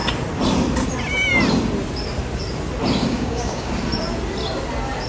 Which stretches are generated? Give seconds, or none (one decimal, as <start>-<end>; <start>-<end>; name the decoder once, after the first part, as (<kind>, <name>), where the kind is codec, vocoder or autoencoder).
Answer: 3.0-3.7 (codec, DAC)